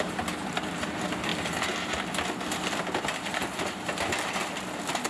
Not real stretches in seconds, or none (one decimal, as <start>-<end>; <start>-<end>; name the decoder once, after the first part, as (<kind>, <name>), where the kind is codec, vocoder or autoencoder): none